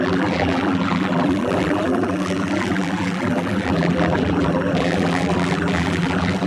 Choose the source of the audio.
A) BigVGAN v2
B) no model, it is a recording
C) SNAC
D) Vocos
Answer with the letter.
A